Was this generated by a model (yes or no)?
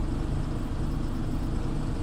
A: no